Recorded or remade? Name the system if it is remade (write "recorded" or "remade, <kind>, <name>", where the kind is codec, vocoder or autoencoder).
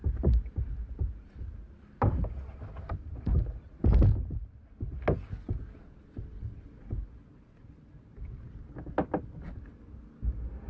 recorded